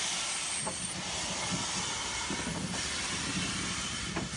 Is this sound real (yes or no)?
yes